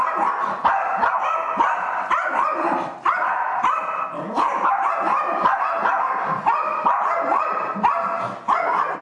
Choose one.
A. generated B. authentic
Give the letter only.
B